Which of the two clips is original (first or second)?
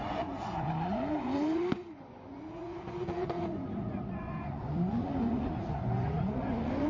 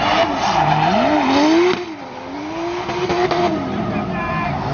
second